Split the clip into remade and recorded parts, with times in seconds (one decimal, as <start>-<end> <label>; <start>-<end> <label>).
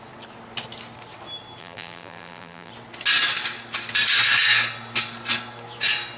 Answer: 0.0-1.6 recorded; 1.6-2.7 remade; 2.7-6.2 recorded